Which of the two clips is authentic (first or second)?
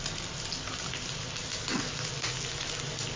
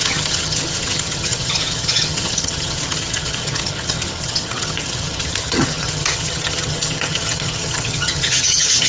first